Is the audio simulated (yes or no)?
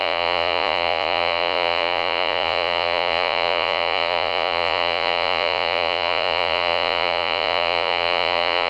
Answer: yes